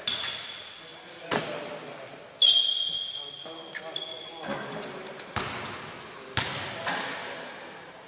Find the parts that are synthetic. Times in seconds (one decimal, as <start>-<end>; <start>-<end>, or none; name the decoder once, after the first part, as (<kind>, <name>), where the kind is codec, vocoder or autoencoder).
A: none